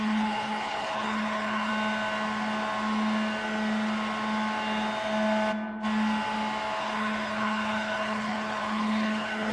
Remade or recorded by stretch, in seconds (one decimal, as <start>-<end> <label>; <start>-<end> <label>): 0.0-1.7 remade; 1.7-6.8 recorded; 6.8-9.5 remade